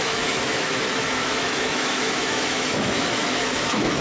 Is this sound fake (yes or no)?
yes